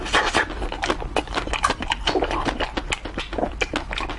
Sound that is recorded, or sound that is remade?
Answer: recorded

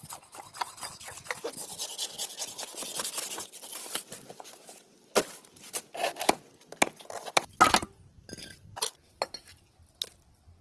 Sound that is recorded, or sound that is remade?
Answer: recorded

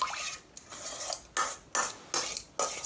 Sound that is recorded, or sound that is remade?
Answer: recorded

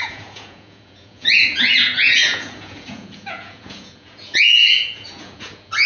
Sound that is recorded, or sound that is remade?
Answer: remade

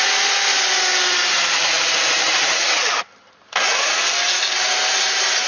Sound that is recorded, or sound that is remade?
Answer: recorded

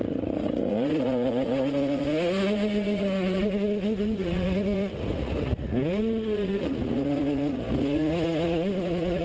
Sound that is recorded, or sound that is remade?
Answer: remade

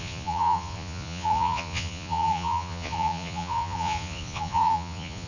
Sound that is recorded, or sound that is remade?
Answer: remade